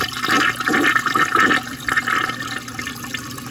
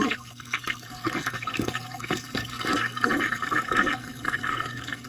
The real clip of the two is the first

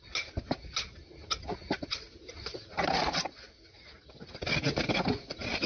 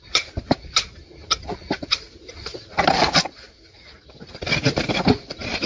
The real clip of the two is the first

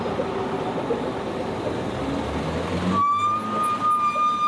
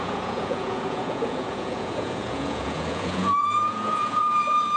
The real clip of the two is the first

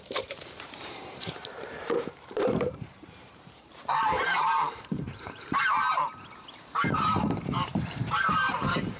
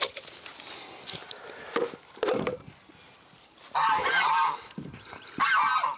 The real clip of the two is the second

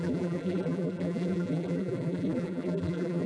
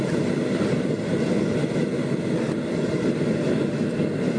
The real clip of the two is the second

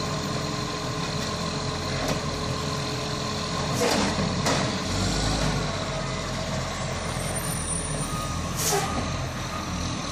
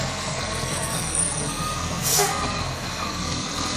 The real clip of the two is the first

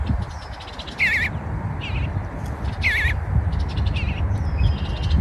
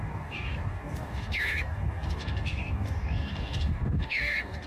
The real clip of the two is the first